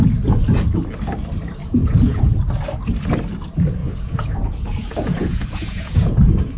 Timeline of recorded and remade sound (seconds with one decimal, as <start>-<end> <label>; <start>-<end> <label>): 0.0-1.6 recorded; 1.6-2.2 remade; 2.2-3.8 recorded; 3.8-6.6 remade